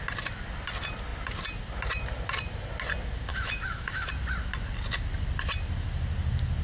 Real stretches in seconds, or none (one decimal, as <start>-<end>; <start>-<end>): 0.0-3.3; 4.1-6.6